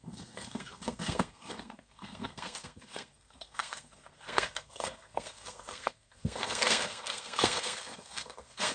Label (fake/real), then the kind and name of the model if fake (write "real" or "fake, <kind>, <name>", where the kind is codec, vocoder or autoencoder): fake, codec, SNAC